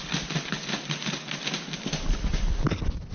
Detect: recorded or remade recorded